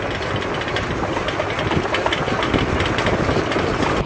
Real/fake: real